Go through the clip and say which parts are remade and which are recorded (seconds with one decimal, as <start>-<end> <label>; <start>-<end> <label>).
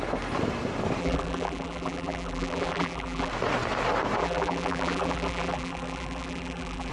0.0-1.0 recorded; 1.0-3.3 remade; 3.3-4.2 recorded; 4.2-6.9 remade